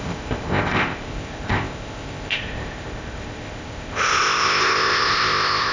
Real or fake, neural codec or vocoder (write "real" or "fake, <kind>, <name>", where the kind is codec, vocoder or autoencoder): fake, codec, ZipCodec